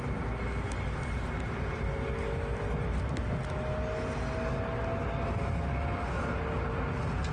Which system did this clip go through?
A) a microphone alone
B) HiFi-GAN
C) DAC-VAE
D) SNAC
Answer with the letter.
A